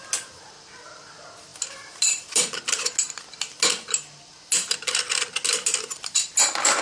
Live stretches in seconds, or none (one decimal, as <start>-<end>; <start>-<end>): 0.0-1.5; 2.4-6.8